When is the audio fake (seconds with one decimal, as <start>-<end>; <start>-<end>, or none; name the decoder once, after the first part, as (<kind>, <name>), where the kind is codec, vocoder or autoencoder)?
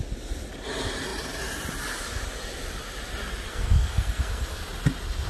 3.5-4.6 (codec, SNAC)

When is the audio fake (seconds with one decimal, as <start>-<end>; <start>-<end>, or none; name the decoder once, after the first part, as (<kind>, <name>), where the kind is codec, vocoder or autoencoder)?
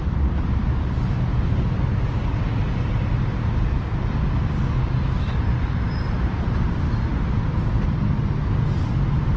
0.0-0.6 (vocoder, BigVGAN v2)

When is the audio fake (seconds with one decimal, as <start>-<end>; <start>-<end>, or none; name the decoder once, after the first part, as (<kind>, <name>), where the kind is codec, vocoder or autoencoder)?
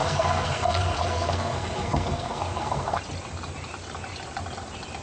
0.0-3.0 (codec, SNAC)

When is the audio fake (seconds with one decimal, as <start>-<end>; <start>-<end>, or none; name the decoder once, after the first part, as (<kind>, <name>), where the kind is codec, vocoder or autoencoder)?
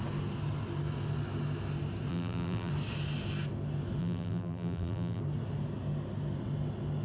2.1-2.7 (vocoder, BigVGAN v2); 4.0-5.2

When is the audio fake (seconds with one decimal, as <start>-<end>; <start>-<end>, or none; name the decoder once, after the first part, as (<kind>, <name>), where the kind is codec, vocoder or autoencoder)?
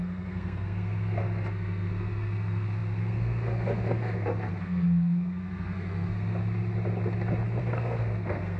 0.0-6.4 (codec, SNAC); 7.6-8.6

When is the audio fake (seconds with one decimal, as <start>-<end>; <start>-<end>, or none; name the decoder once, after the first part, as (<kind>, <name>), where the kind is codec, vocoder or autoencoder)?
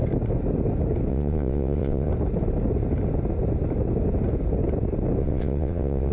1.1-2.1 (vocoder, WaveNeXt); 5.2-6.1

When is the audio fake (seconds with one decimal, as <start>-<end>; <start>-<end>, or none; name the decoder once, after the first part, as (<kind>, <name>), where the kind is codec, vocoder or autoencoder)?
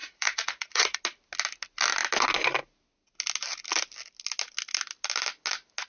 0.0-1.0 (vocoder, Vocos)